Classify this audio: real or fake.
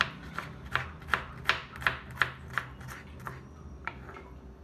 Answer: real